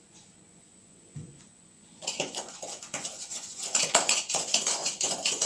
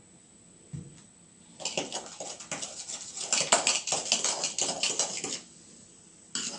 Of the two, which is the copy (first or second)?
first